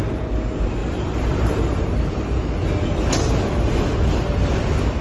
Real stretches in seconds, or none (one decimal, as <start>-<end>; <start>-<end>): 0.0-0.8; 2.4-5.0